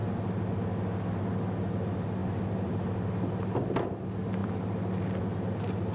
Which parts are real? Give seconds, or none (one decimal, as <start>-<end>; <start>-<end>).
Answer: 0.0-2.2; 3.1-5.9